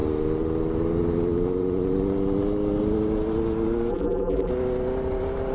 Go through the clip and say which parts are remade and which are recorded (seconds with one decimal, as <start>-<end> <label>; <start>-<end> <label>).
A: 0.0-3.9 recorded; 3.9-4.5 remade; 4.5-5.5 recorded